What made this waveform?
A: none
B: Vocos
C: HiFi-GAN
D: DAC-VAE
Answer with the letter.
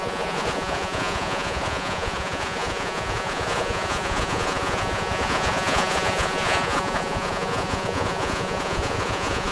B